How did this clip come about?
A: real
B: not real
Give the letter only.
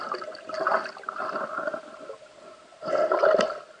A